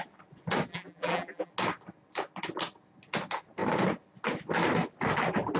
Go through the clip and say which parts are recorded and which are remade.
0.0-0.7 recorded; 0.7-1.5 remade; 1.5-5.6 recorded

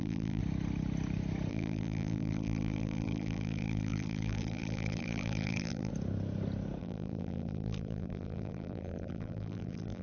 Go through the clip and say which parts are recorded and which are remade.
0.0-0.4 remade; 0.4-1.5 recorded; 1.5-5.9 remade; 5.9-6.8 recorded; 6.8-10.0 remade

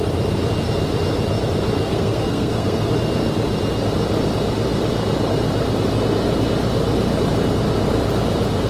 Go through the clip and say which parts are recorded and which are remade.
0.0-1.9 recorded; 1.9-2.9 remade; 2.9-8.7 recorded

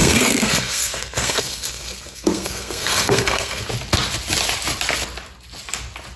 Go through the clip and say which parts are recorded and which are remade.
0.0-3.6 remade; 3.6-6.2 recorded

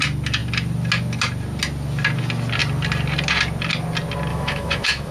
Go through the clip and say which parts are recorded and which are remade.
0.0-4.3 recorded; 4.3-5.1 remade

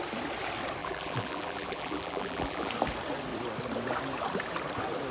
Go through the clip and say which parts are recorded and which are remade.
0.0-0.8 recorded; 0.8-2.7 remade; 2.7-5.1 recorded

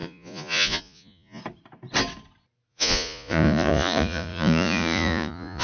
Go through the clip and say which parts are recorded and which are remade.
0.0-1.4 remade; 1.4-2.7 recorded; 2.7-5.6 remade

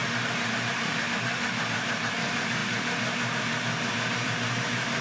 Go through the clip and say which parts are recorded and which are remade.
0.0-5.0 remade